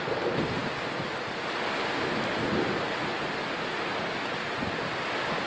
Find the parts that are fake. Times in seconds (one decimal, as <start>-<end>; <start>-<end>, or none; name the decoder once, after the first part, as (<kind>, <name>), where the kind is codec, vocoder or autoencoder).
none

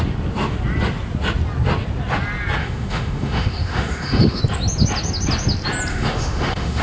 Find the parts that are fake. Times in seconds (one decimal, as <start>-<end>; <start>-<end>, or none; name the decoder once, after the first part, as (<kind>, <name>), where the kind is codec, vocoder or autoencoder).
2.6-4.4 (autoencoder, DAC-VAE); 5.9-6.8